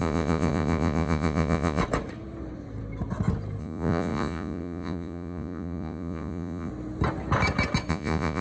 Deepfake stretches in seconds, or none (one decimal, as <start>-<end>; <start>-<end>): 0.0-1.8; 3.6-6.7; 7.9-8.4